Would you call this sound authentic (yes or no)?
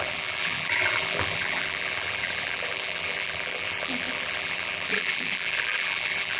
no